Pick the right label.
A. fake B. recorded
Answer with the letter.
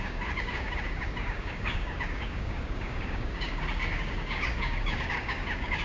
A